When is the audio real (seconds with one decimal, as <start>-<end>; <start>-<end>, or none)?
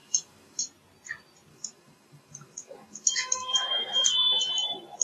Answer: 0.6-1.5; 4.5-5.0